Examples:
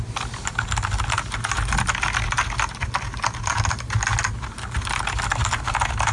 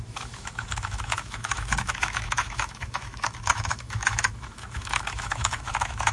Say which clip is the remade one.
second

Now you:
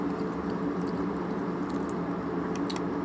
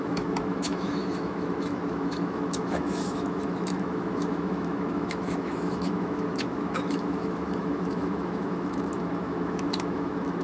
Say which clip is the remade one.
second